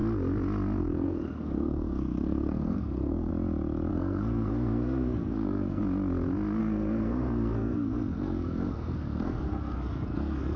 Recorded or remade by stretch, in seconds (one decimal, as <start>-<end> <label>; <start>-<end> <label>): 0.0-0.8 recorded; 0.8-3.3 remade; 3.3-3.9 recorded; 3.9-5.8 remade; 5.8-6.6 recorded; 6.6-10.6 remade